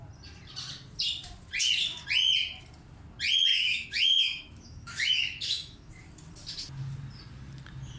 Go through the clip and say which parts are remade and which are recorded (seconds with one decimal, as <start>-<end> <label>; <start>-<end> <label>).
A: 0.0-3.5 recorded; 3.5-5.9 remade; 5.9-8.0 recorded